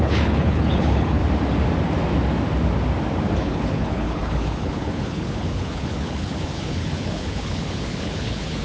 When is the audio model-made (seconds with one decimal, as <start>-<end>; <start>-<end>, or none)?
0.0-1.2; 3.4-8.6